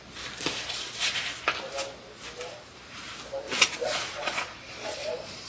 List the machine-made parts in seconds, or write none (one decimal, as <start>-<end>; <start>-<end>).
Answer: 3.8-5.5